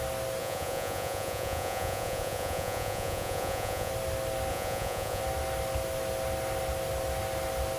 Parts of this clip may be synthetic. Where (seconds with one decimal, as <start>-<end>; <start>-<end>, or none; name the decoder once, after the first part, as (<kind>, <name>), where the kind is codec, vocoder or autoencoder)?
0.4-3.9 (vocoder, Vocos); 4.5-5.2